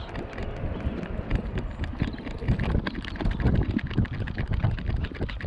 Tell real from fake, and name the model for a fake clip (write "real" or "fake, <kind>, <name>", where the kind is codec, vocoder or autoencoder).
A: real